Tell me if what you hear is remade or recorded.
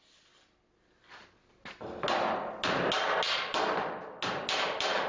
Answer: recorded